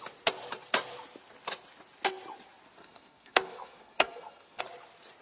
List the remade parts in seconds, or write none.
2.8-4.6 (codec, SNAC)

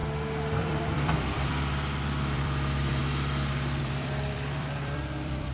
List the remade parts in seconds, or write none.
0.6-3.0 (vocoder, BigVGAN v2); 3.8-5.5

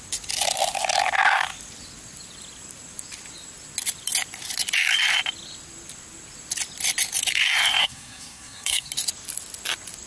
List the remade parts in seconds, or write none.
7.8-8.9 (codec, SNAC)

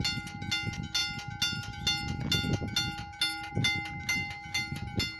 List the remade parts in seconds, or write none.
none

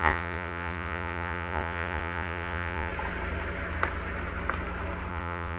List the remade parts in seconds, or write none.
0.0-2.9 (vocoder, Vocos); 5.1-5.6

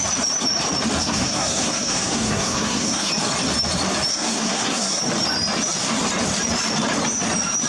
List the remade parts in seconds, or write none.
1.0-3.1 (codec, SNAC); 4.1-5.0